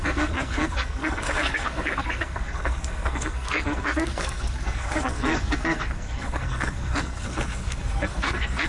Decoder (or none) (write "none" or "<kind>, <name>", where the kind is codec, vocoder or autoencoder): codec, SNAC